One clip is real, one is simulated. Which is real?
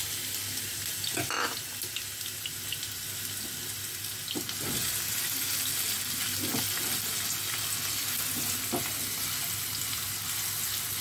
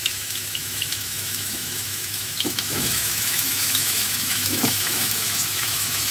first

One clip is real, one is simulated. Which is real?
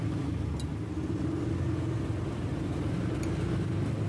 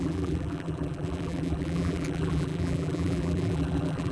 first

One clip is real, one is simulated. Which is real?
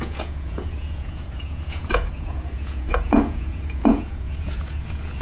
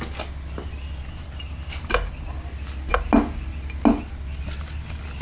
second